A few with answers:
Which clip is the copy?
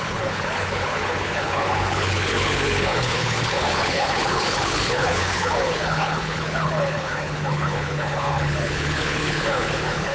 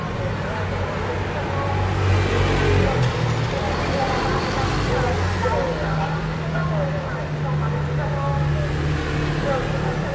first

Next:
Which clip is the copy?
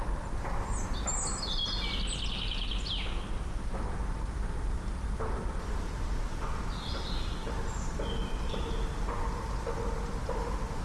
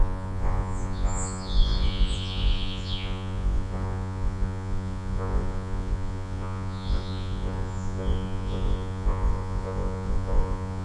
second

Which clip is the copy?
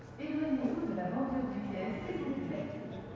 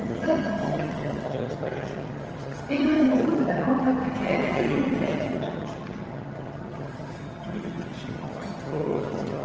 second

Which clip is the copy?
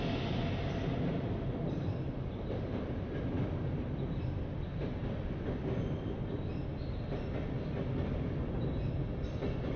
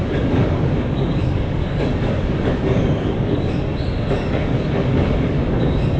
second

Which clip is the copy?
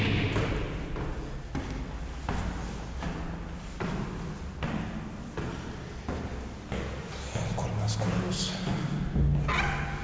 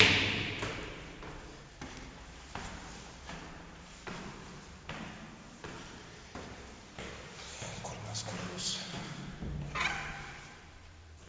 second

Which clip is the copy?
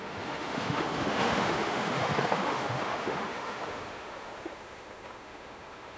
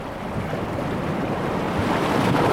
first